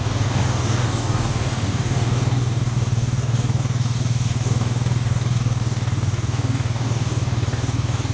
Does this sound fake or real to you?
fake